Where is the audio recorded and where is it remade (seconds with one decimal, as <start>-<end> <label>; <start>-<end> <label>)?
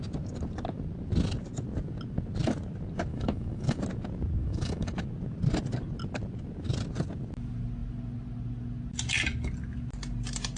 0.0-3.1 recorded; 3.1-3.8 remade; 3.8-4.4 recorded; 4.4-4.9 remade; 4.9-10.6 recorded